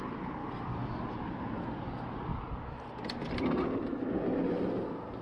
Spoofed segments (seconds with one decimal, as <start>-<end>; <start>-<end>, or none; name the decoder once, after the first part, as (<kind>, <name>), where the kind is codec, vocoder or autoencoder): none